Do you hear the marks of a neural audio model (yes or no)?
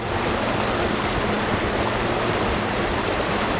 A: no